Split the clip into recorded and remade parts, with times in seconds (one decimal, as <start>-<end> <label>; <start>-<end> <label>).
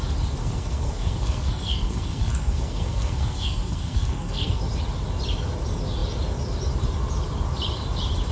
0.0-0.4 recorded; 0.4-4.6 remade; 4.6-8.3 recorded